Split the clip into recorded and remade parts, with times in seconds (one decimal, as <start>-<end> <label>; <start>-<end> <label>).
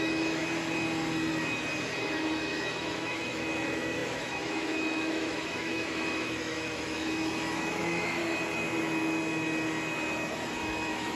0.0-0.4 remade; 0.4-2.0 recorded; 2.0-8.2 remade; 8.2-10.6 recorded; 10.6-11.2 remade